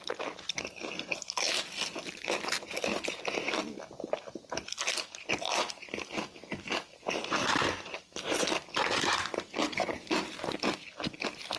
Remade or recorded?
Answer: recorded